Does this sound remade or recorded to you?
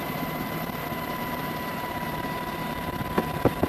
remade